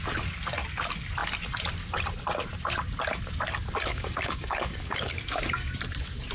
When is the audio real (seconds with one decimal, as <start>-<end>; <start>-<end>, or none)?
0.0-3.9; 5.8-6.3